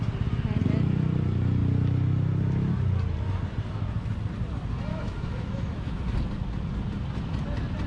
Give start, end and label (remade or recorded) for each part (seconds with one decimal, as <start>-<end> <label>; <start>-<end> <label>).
0.0-4.9 recorded; 4.9-6.0 remade; 6.0-7.9 recorded